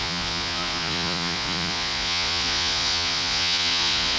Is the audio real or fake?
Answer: fake